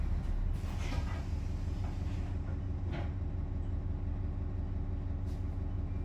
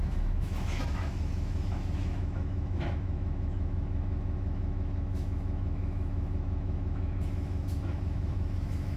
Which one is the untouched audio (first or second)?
first